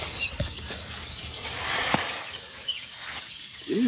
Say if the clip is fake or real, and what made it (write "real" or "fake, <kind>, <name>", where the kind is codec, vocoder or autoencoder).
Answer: fake, codec, DAC